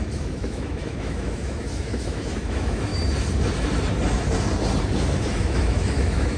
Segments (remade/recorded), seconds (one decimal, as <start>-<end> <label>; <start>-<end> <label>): 0.0-2.9 remade; 2.9-5.2 recorded; 5.2-6.4 remade